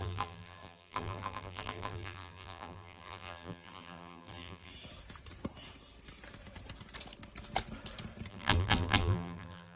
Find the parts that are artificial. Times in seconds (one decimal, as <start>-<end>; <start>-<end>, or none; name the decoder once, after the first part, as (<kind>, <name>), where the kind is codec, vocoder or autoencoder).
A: 0.0-4.7 (vocoder, BigVGAN v2); 8.3-9.8